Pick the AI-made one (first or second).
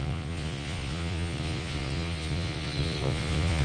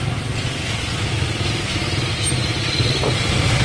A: first